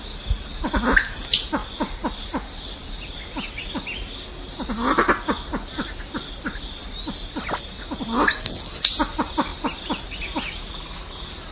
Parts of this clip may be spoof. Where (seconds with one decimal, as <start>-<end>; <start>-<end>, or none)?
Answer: none